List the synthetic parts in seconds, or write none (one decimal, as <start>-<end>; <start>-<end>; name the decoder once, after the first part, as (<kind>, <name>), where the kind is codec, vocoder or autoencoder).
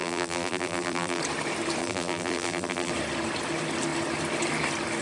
0.0-1.2 (vocoder, BigVGAN v2); 1.8-2.9